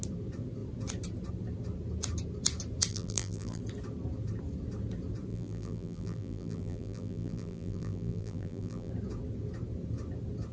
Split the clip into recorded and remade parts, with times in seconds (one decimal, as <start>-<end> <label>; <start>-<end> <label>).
0.0-2.9 recorded; 2.9-3.6 remade; 3.6-5.3 recorded; 5.3-8.9 remade; 8.9-10.5 recorded